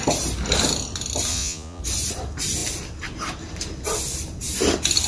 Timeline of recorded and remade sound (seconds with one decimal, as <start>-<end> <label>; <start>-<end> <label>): 0.0-1.3 recorded; 1.3-1.8 remade; 1.8-5.1 recorded